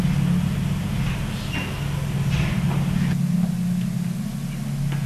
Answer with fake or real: real